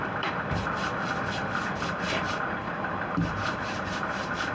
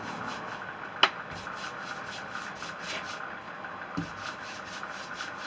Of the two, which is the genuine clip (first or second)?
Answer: second